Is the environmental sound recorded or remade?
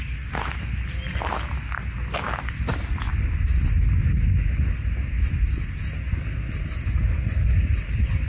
recorded